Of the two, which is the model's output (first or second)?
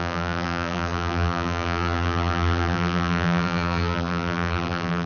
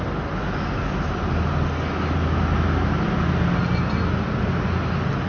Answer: first